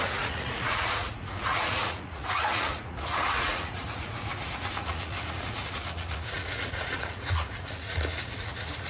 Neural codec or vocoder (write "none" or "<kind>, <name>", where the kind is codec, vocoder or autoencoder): vocoder, Vocos